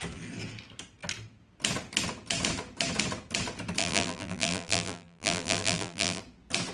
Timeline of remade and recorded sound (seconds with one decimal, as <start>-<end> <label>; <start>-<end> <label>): 0.0-3.8 recorded; 3.8-6.2 remade; 6.2-6.7 recorded